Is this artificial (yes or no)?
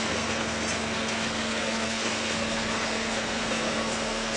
yes